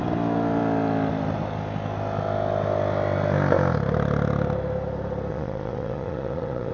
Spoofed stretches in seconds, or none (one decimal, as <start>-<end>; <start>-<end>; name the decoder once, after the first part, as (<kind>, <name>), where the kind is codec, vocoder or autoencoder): 5.3-6.7 (vocoder, Vocos)